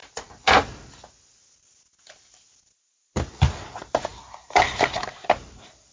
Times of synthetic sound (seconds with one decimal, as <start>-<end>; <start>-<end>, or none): none